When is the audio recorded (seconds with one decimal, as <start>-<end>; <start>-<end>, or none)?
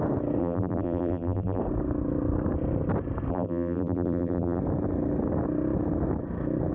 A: 0.0-0.4; 1.6-3.3; 4.6-6.7